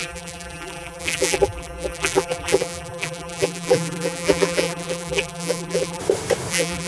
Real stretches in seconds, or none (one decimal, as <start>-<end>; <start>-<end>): 6.0-6.5